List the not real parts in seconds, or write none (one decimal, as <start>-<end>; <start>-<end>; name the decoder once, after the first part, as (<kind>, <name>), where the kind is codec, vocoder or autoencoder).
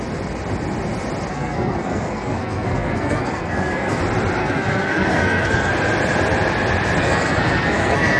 1.3-4.0 (codec, SNAC); 4.4-5.7; 7.0-8.2